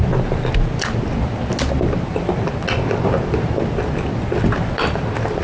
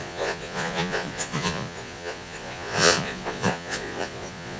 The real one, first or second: first